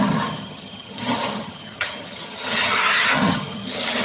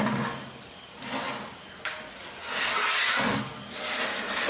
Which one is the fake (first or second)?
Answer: first